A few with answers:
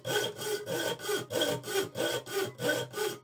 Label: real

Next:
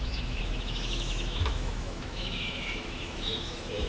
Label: fake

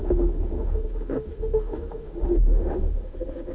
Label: fake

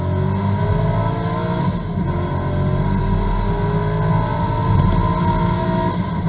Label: real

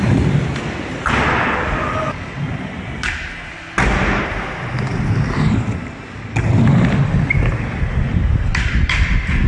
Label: real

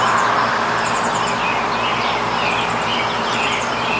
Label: real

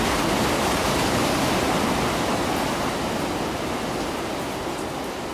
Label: real